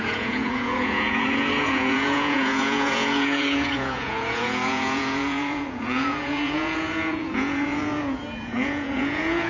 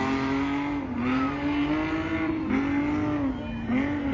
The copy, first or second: first